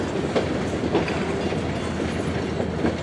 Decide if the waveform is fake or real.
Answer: real